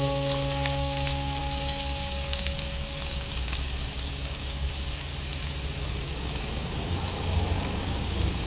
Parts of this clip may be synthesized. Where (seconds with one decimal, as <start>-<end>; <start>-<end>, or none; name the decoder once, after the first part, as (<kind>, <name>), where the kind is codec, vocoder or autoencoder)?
0.0-5.1 (codec, DAC); 5.8-8.5